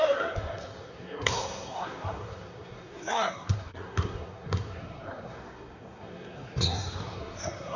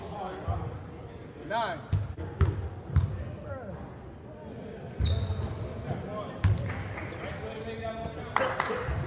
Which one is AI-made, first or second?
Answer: first